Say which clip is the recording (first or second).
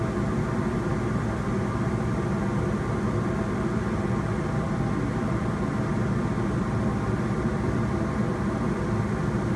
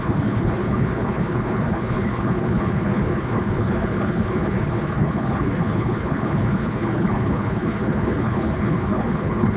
first